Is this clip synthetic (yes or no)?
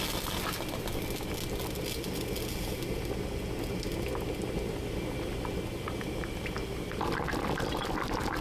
no